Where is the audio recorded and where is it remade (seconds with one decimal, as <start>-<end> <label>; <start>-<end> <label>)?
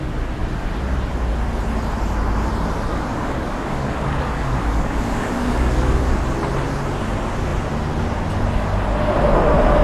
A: 0.0-2.9 recorded; 2.9-6.2 remade; 6.2-9.8 recorded